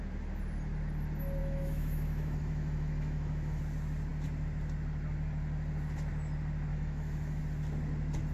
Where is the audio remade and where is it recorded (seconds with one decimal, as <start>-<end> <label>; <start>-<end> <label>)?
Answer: 0.0-1.4 recorded; 1.4-3.6 remade; 3.6-6.7 recorded; 6.7-7.4 remade; 7.4-8.3 recorded